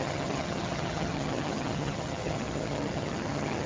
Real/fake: fake